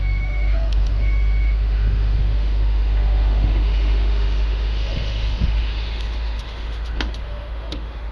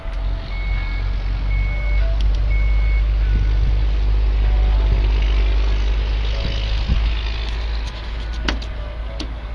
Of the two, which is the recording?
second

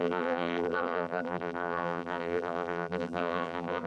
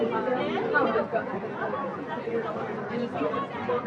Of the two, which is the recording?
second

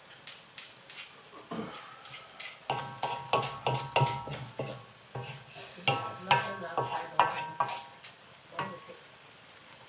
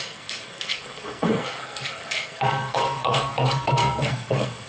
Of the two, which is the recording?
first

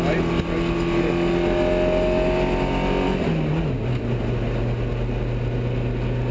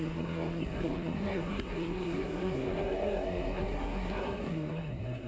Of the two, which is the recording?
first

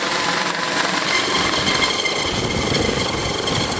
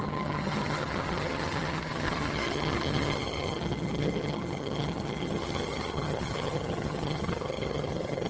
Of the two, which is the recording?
first